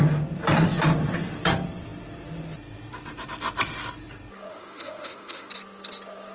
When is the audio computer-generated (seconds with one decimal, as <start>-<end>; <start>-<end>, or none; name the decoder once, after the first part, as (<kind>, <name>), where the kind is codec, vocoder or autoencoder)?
4.5-5.5 (autoencoder, DAC-VAE)